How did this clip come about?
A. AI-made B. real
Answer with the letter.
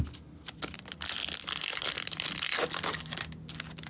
B